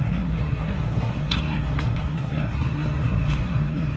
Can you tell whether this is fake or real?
fake